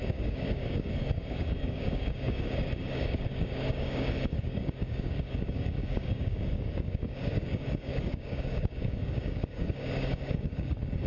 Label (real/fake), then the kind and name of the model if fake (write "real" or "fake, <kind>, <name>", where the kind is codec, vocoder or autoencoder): fake, codec, DAC